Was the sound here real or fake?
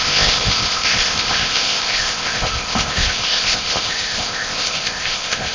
fake